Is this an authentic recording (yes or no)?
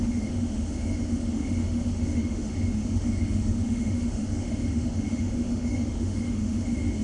no